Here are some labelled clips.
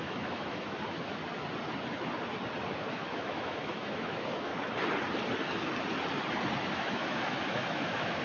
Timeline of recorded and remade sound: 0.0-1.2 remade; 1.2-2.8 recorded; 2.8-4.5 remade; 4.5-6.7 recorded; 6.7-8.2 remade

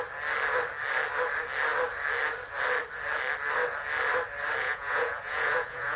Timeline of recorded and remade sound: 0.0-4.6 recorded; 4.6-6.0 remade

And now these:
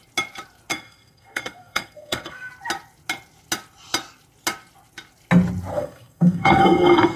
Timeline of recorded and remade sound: 0.0-0.7 recorded; 0.7-2.5 remade; 2.5-5.7 recorded; 5.7-7.2 remade